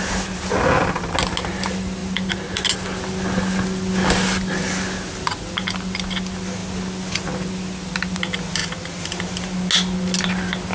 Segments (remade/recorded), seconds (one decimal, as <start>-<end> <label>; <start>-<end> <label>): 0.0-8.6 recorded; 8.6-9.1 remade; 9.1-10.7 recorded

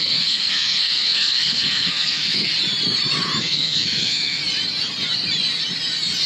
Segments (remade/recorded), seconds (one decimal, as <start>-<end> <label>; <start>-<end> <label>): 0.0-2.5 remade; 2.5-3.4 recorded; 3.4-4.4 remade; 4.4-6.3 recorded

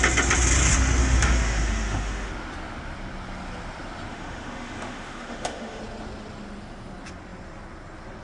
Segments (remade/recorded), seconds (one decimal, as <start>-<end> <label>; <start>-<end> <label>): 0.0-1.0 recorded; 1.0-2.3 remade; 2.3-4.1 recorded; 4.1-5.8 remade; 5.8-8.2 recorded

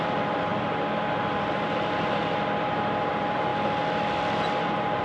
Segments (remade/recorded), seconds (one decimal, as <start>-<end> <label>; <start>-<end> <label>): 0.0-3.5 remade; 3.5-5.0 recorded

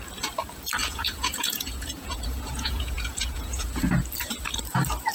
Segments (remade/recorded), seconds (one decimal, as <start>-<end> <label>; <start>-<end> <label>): 0.0-0.8 recorded; 0.8-3.9 remade; 3.9-5.1 recorded

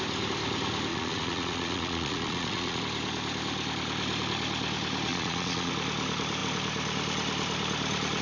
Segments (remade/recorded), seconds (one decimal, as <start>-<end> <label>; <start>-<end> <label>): 0.0-0.9 recorded; 0.9-2.8 remade; 2.8-5.1 recorded; 5.1-5.7 remade; 5.7-8.2 recorded

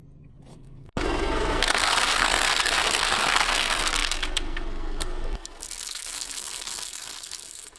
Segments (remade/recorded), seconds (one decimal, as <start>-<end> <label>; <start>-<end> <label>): 0.0-0.5 recorded; 0.5-7.8 remade

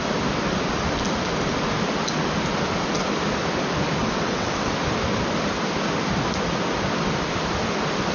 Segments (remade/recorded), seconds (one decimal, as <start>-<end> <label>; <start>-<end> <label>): 0.0-4.0 recorded; 4.0-4.7 remade; 4.7-8.1 recorded